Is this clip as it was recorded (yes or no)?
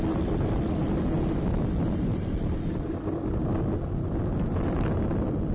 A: yes